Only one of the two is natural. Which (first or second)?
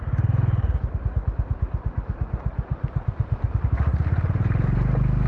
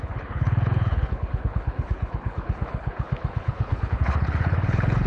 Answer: first